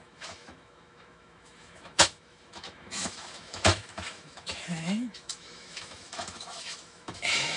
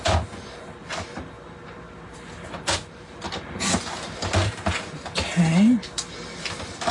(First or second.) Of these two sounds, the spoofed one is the first